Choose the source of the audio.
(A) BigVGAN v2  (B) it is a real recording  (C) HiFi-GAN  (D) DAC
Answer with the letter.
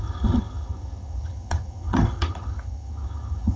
C